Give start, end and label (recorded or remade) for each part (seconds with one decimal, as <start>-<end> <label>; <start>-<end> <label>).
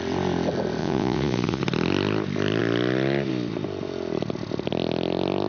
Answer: 0.0-0.8 recorded; 0.8-1.6 remade; 1.6-5.5 recorded